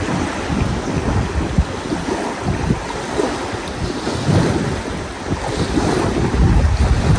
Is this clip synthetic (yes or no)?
no